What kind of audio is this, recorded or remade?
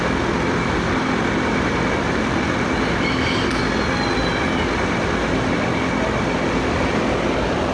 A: recorded